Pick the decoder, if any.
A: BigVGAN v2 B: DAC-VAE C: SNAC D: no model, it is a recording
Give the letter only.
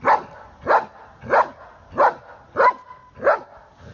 D